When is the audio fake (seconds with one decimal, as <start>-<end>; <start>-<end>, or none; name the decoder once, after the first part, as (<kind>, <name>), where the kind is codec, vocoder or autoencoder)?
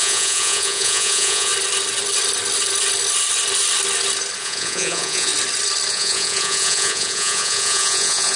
0.0-1.5 (vocoder, Vocos); 4.4-5.3; 5.9-8.4